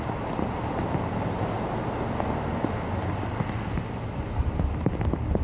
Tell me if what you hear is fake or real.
real